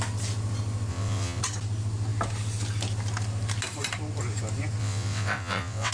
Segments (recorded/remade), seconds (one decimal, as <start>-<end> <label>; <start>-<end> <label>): 0.0-0.9 recorded; 0.9-1.4 remade; 1.4-4.8 recorded; 4.8-5.9 remade